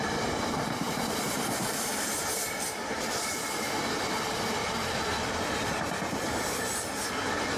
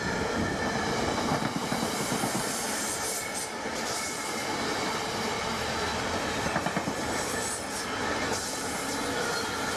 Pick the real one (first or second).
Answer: second